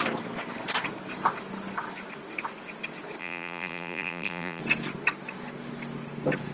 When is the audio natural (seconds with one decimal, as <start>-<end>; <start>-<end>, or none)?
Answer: 0.0-3.2; 4.6-6.5